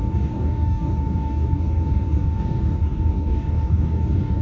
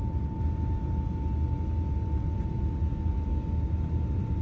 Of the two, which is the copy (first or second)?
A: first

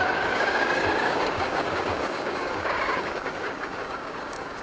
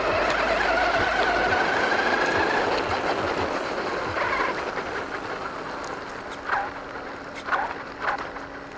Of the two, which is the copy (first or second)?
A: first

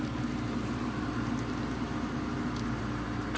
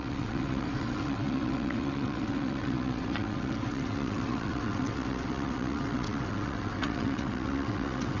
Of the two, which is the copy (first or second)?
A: second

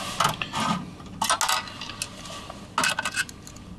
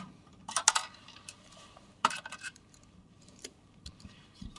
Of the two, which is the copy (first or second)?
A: second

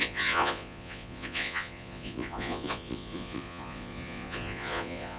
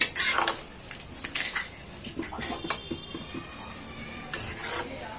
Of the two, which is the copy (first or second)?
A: first